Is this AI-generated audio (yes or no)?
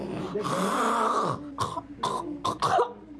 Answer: no